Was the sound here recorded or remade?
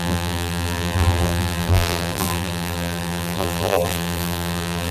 remade